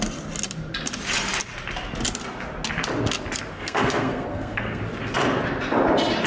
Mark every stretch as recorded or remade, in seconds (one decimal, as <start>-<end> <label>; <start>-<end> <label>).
0.0-3.5 recorded; 3.5-4.8 remade; 4.8-6.3 recorded